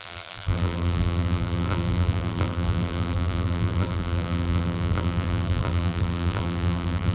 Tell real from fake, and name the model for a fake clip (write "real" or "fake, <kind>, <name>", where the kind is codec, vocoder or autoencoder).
fake, vocoder, BigVGAN v2